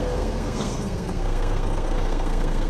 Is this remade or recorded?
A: remade